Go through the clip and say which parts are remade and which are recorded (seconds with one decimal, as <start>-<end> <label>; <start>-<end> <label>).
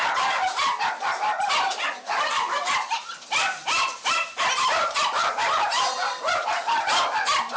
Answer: 0.0-1.3 remade; 1.3-2.3 recorded; 2.3-6.6 remade; 6.6-7.6 recorded